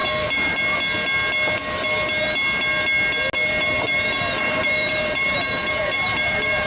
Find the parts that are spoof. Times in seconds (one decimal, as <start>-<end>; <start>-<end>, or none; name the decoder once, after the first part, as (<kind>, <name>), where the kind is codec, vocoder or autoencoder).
0.0-0.6 (vocoder, BigVGAN v2); 3.7-6.7